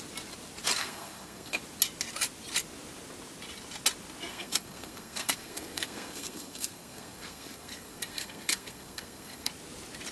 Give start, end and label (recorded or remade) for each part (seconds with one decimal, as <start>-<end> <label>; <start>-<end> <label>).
0.0-0.8 recorded; 0.8-1.6 remade; 1.6-4.3 recorded; 4.3-9.5 remade; 9.5-10.1 recorded

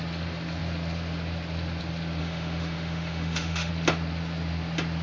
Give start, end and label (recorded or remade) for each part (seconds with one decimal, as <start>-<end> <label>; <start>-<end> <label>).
0.0-2.2 recorded; 2.2-3.7 remade; 3.7-5.0 recorded

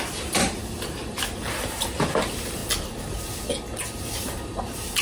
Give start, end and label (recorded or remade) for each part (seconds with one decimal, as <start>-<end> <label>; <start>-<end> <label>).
0.0-0.6 remade; 0.6-1.1 recorded; 1.1-2.6 remade; 2.6-4.0 recorded; 4.0-5.0 remade

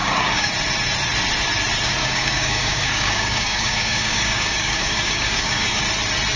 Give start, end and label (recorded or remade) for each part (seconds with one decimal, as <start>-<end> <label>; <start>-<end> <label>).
0.0-0.5 remade; 0.5-2.0 recorded; 2.0-5.8 remade; 5.8-6.4 recorded